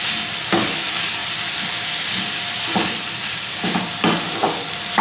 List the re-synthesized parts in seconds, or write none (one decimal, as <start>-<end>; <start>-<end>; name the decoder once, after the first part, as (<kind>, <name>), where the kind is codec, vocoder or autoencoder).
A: none